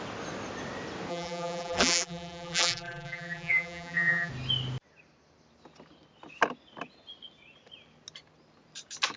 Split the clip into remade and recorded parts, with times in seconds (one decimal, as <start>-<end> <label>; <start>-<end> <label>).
0.0-1.1 recorded; 1.1-4.3 remade; 4.3-9.2 recorded